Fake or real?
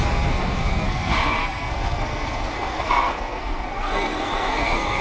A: fake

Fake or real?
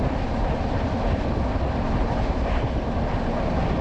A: fake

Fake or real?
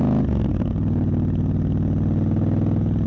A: real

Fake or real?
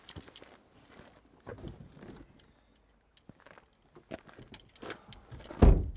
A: real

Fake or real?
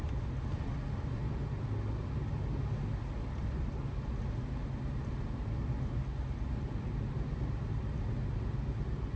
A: real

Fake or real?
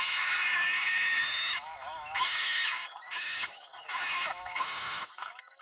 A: fake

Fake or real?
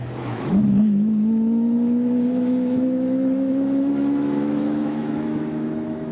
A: fake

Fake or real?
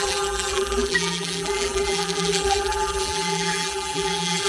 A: fake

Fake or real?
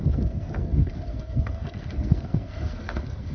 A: fake